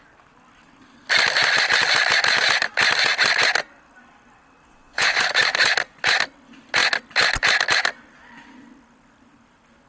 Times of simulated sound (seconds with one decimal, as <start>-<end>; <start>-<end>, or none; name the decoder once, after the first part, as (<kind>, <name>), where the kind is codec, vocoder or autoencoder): 4.7-5.2 (vocoder, Vocos)